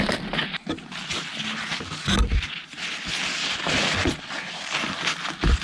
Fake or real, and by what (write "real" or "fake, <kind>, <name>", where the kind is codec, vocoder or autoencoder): real